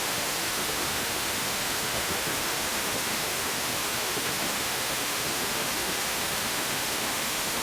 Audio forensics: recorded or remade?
remade